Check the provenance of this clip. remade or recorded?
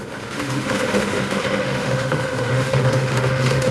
remade